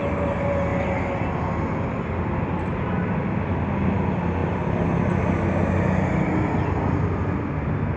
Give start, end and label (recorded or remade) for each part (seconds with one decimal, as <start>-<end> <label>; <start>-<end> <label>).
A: 0.0-8.0 recorded